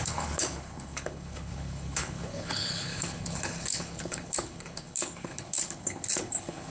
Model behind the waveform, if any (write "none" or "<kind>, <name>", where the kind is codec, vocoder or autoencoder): codec, HILCodec